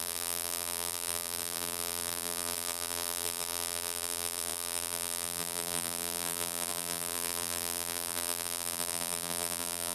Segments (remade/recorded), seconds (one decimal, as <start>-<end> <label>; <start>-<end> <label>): 0.0-9.9 remade